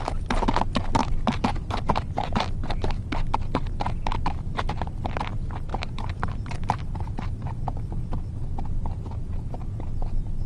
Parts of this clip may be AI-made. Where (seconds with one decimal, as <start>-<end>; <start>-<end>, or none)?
1.0-1.8; 5.7-8.1